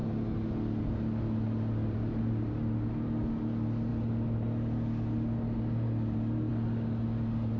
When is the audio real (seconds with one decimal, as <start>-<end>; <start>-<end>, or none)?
0.0-7.6